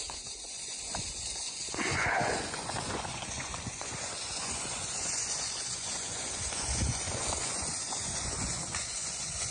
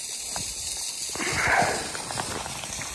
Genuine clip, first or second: second